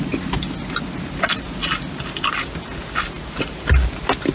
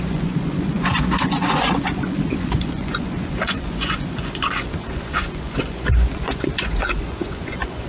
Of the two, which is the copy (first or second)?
second